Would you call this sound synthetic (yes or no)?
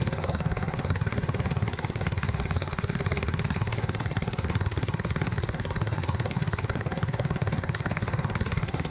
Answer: yes